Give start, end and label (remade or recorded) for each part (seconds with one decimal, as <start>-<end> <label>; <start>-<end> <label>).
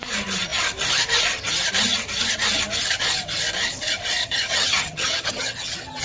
0.0-4.2 recorded; 4.2-6.0 remade